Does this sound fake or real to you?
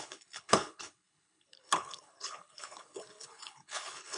fake